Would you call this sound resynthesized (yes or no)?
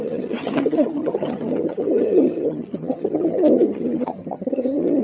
yes